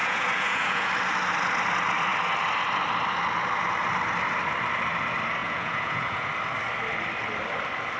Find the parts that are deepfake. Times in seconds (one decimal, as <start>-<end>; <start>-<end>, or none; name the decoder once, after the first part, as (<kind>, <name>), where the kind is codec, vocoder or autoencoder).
0.0-0.9 (vocoder, Vocos); 5.4-6.3